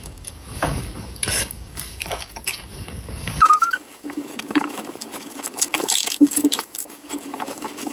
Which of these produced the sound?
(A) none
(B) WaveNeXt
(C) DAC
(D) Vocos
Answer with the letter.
C